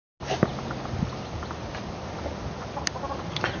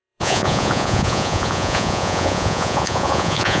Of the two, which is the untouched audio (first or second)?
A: first